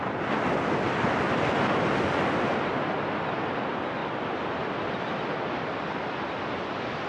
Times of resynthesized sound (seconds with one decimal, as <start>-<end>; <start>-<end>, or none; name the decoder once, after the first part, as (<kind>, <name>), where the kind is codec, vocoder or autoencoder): none